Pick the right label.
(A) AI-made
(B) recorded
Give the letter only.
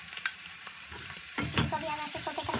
A